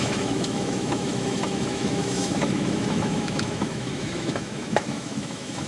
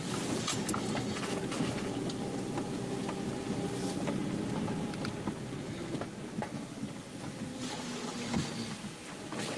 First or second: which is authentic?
second